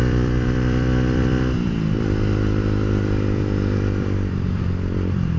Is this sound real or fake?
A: fake